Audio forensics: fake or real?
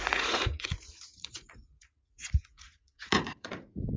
fake